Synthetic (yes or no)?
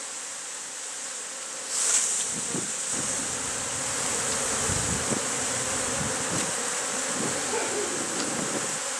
no